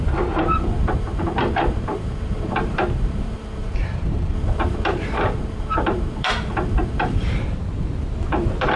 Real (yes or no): no